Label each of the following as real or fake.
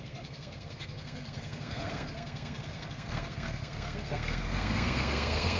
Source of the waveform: fake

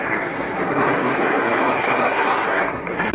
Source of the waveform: fake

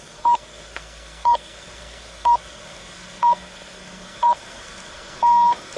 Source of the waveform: fake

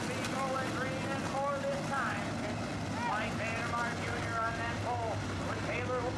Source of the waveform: real